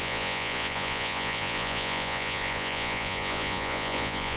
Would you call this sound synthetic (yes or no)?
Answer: yes